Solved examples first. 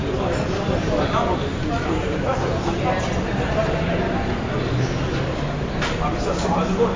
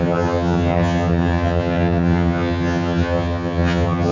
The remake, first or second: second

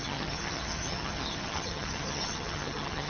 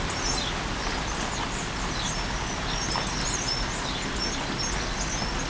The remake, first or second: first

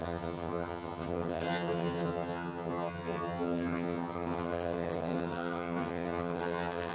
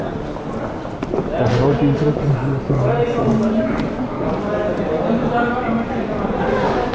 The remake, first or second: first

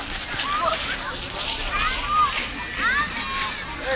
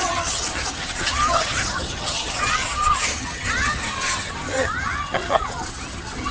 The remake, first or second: second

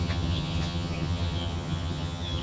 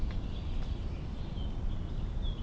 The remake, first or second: first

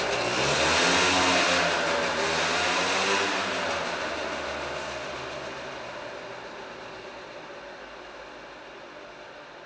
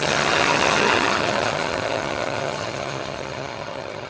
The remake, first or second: second